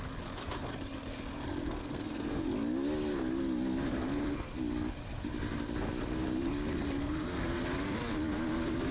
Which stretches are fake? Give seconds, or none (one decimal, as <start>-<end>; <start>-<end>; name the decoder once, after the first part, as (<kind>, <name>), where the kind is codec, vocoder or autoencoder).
1.8-2.4 (codec, SNAC); 7.0-7.6